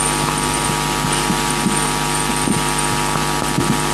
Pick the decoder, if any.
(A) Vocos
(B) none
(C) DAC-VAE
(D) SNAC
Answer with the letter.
B